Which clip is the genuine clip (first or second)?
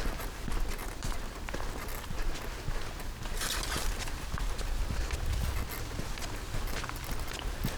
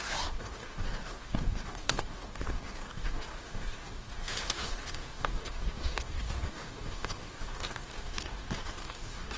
first